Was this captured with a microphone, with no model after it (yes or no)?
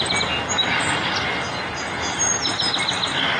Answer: yes